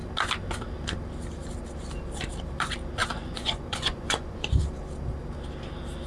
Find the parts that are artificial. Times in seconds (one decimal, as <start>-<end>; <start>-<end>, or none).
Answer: 3.0-4.5